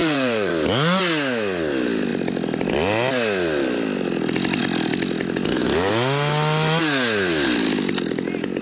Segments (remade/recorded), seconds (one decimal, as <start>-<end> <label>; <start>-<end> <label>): 0.0-0.5 remade; 0.5-8.6 recorded